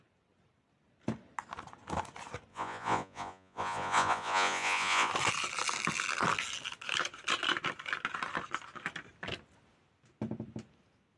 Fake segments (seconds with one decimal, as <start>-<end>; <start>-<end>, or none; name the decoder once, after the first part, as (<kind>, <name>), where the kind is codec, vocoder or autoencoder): 2.5-5.1 (vocoder, Vocos)